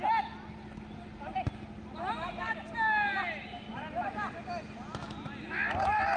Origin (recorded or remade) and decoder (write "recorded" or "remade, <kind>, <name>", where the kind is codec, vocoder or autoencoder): recorded